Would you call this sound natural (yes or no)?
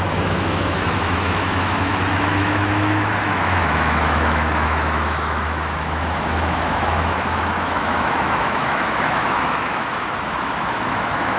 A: no